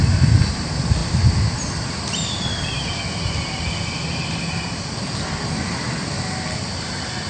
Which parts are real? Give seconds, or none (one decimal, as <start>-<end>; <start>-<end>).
0.0-7.3